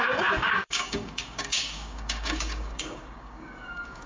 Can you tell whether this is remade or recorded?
remade